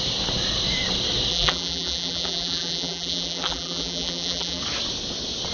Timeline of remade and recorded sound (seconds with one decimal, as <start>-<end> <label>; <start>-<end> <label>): 0.0-1.3 recorded; 1.3-4.6 remade; 4.6-5.5 recorded